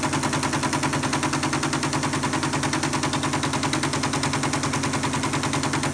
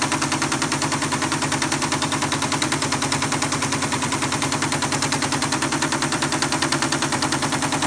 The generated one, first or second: second